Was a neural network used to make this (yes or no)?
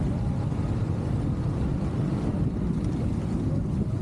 yes